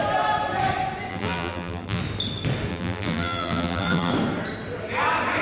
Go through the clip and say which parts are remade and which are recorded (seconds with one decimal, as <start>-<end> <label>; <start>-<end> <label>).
0.0-1.1 recorded; 1.1-2.0 remade; 2.0-2.7 recorded; 2.7-4.1 remade; 4.1-5.4 recorded